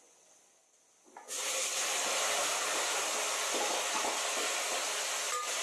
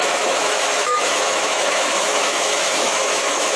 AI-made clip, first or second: second